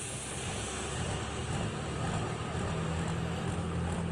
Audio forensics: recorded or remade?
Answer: recorded